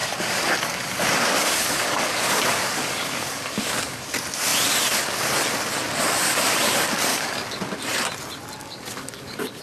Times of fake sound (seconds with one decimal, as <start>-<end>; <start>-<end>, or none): 0.0-4.0; 7.1-7.8; 8.6-9.6